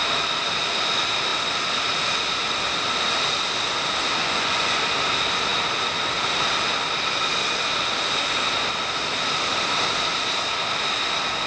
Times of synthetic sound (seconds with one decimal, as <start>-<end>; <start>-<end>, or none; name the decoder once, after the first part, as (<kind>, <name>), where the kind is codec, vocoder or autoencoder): 4.2-4.8 (vocoder, Vocos)